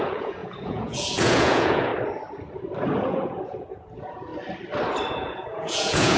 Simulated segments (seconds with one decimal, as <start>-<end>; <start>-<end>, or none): 0.0-1.9; 3.0-4.3; 5.1-6.2